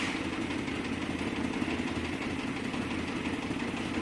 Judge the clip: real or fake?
real